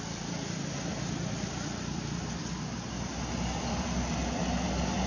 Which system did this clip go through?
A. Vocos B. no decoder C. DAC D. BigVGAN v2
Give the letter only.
B